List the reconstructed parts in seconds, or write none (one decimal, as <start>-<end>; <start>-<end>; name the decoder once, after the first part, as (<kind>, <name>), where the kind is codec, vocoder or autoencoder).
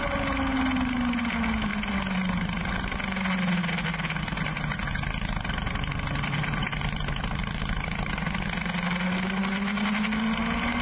7.4-8.1 (vocoder, BigVGAN v2)